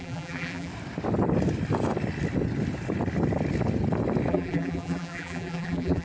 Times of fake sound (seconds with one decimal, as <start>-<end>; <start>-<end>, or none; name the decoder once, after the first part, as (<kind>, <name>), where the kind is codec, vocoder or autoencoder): 0.0-0.7 (vocoder, BigVGAN v2); 4.3-6.0